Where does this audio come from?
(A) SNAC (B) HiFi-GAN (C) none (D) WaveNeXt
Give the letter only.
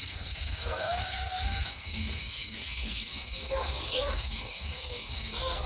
A